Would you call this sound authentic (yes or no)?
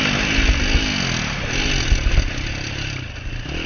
yes